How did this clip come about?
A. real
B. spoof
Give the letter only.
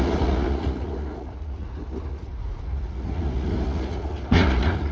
B